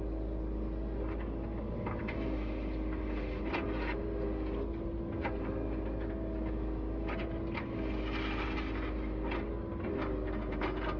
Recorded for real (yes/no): yes